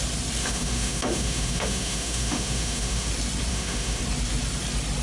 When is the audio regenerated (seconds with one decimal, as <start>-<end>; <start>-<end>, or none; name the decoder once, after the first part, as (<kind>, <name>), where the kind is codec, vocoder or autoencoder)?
0.4-3.1 (autoencoder, DAC-VAE); 3.5-4.0